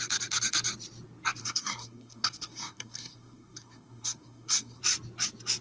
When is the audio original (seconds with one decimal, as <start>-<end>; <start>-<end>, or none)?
0.0-1.4; 4.8-5.6

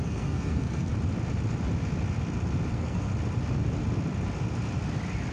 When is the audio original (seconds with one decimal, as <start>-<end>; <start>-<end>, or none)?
0.9-2.7; 3.1-5.3

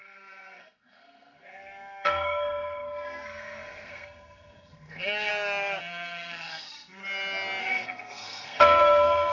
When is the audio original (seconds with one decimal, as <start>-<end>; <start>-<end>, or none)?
5.3-5.8; 7.0-7.6